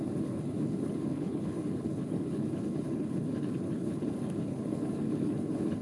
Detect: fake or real fake